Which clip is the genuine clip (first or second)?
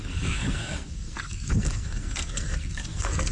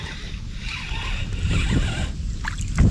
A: second